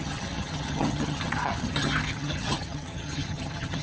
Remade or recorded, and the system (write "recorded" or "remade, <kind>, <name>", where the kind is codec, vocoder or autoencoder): remade, vocoder, HiFi-GAN